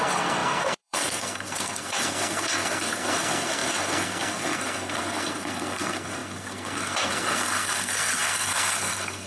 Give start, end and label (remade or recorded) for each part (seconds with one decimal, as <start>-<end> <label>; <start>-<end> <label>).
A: 0.0-9.3 remade